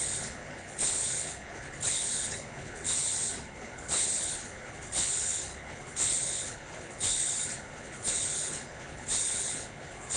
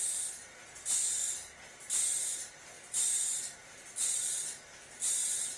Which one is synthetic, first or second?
first